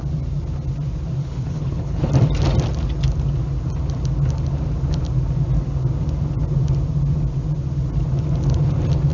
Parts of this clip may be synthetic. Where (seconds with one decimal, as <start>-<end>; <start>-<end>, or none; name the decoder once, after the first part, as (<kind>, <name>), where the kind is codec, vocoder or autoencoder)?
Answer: 1.2-2.1 (codec, HILCodec)